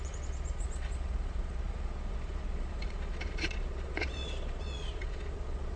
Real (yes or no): no